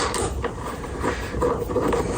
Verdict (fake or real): real